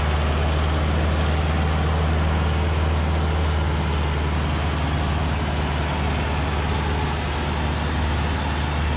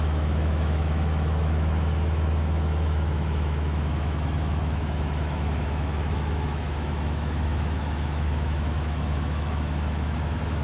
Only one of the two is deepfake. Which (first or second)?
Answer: second